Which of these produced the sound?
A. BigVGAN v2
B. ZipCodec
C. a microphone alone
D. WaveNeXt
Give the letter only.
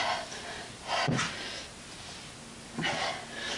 C